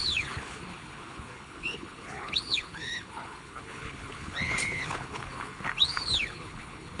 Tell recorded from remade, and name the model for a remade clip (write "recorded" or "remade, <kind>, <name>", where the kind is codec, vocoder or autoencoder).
remade, codec, HILCodec